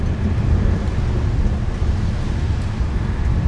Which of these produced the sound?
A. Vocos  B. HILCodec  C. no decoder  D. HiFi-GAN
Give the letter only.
C